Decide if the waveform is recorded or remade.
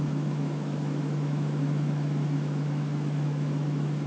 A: remade